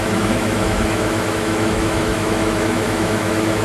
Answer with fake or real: fake